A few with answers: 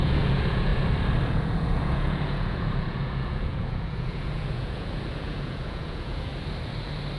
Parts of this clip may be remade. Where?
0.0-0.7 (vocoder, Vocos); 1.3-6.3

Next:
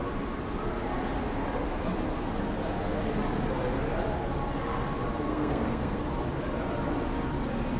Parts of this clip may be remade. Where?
5.3-6.0 (codec, SNAC)

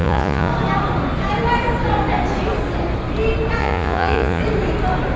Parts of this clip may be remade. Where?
0.0-0.5 (vocoder, Vocos); 3.6-4.4